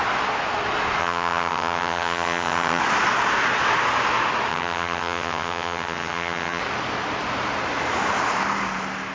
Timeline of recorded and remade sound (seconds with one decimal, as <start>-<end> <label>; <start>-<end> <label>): 0.0-1.0 recorded; 1.0-2.8 remade; 2.8-4.5 recorded; 4.5-6.6 remade; 6.6-9.1 recorded